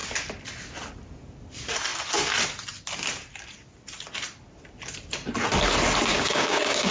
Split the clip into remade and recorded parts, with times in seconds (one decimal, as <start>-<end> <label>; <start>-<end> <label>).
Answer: 0.0-6.1 recorded; 6.1-6.9 remade